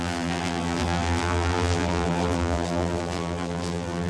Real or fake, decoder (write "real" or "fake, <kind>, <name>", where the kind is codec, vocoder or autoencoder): fake, vocoder, BigVGAN v2